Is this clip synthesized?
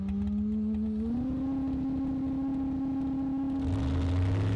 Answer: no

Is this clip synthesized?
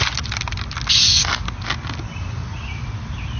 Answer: no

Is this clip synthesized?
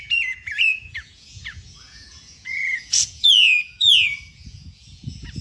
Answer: yes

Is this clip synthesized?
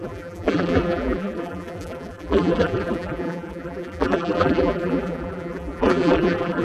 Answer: yes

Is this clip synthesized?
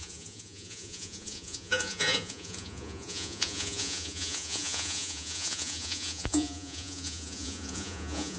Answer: yes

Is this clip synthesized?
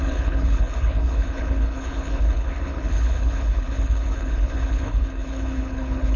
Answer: yes